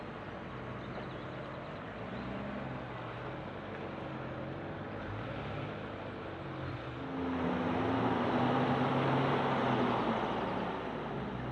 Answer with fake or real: real